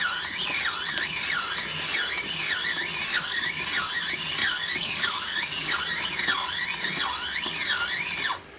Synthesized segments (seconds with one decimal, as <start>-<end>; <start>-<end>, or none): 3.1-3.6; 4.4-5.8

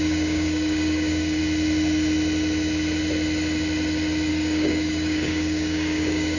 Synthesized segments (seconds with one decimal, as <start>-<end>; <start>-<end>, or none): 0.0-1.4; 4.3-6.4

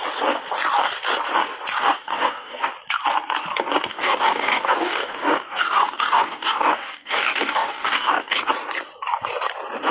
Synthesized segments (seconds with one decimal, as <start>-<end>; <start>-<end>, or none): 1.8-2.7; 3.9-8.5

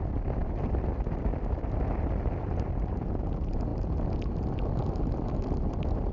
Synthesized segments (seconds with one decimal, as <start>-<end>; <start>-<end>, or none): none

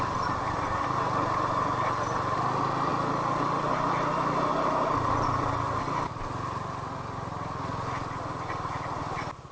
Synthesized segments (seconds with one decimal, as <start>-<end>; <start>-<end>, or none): none

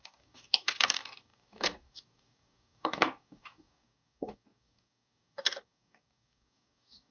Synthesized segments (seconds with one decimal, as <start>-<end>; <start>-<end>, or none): 0.0-7.1